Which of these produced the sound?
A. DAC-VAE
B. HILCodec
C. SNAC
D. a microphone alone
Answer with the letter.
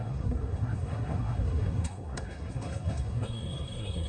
C